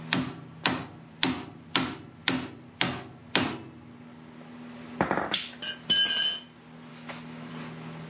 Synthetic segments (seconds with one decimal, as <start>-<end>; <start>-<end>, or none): 6.9-7.5